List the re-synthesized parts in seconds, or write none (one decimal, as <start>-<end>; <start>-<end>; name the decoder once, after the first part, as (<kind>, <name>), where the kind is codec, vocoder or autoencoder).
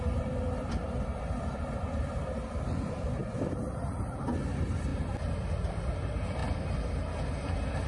0.0-4.9 (vocoder, BigVGAN v2); 5.7-7.9